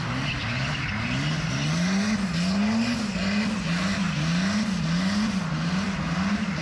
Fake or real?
real